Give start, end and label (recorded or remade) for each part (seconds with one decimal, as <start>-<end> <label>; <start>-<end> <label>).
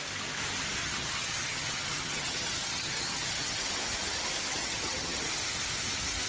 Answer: 0.0-0.8 recorded; 0.8-3.6 remade; 3.6-4.5 recorded; 4.5-5.3 remade; 5.3-6.3 recorded